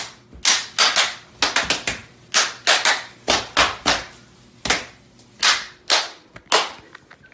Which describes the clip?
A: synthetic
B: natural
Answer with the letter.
B